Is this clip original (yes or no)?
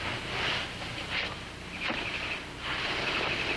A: yes